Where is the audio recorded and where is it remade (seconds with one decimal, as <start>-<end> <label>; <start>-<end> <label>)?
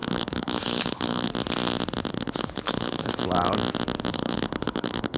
0.0-1.3 remade; 1.3-2.1 recorded; 2.1-3.2 remade; 3.2-4.1 recorded; 4.1-5.2 remade